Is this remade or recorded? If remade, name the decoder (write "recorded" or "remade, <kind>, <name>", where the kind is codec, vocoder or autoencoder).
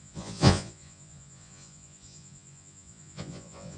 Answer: remade, vocoder, Vocos